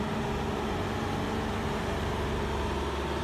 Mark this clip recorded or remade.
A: recorded